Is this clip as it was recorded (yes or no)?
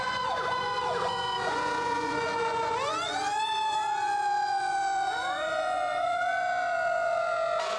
no